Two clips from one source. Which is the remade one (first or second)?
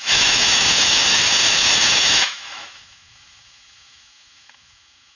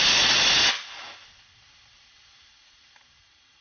first